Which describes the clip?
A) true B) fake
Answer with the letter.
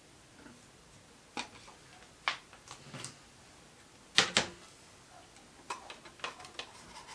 A